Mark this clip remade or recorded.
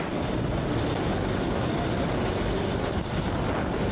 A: recorded